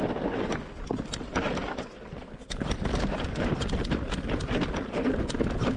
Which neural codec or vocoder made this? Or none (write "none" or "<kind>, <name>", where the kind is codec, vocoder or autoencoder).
none